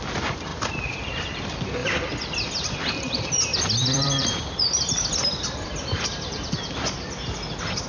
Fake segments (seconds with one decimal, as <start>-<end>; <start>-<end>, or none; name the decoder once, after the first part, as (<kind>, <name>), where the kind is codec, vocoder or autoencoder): 0.5-1.4 (vocoder, BigVGAN v2); 1.8-6.5